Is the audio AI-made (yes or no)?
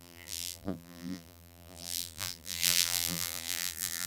yes